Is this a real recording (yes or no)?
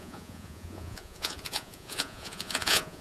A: no